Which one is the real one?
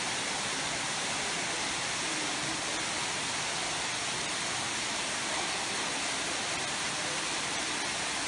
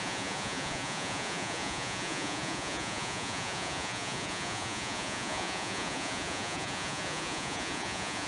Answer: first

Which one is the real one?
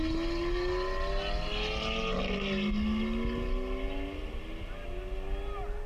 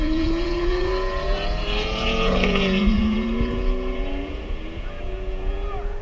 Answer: first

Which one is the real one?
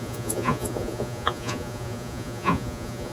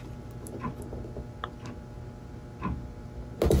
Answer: second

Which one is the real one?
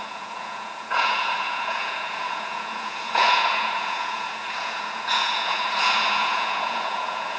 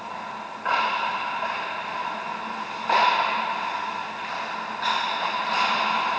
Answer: second